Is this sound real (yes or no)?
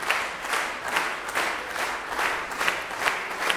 yes